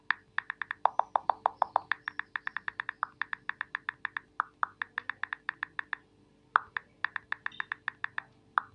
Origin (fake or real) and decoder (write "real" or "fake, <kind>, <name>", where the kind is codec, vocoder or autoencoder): real